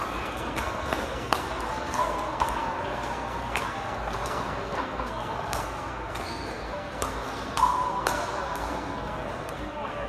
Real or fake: fake